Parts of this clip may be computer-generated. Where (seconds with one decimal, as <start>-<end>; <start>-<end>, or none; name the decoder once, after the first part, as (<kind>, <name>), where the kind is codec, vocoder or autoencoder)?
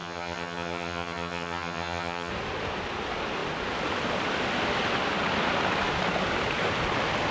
0.0-2.3 (vocoder, HiFi-GAN)